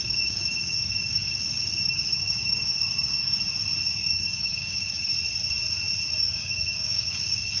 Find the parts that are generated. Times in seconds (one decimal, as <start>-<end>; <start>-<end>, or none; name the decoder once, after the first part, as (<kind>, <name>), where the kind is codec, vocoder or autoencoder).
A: 0.0-3.4 (codec, DAC); 4.0-5.1; 6.2-7.6